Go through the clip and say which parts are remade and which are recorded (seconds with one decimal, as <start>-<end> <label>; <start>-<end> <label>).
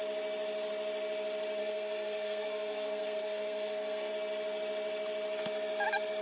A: 0.0-1.6 recorded; 1.6-4.1 remade; 4.1-6.2 recorded